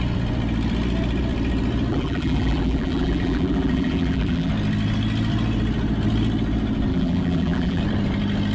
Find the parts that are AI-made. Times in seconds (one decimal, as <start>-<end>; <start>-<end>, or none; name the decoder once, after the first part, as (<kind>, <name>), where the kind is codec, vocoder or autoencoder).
1.9-4.5 (vocoder, BigVGAN v2); 6.9-7.8

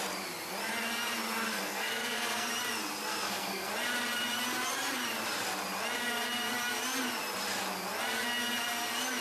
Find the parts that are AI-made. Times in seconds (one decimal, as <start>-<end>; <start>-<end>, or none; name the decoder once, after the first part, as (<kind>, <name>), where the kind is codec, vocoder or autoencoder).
1.5-2.5 (codec, SNAC); 3.1-3.7